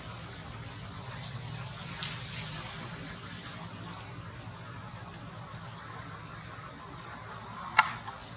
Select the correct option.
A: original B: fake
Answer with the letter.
A